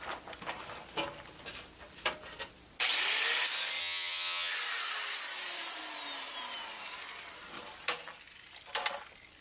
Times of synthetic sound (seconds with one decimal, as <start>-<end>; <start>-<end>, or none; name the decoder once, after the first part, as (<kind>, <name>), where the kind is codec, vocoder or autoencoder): 3.8-4.5 (vocoder, HiFi-GAN)